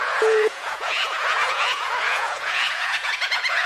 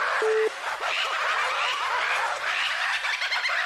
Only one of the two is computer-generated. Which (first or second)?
first